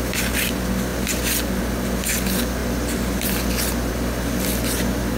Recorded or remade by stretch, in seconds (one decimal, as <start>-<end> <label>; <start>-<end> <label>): 0.0-5.2 recorded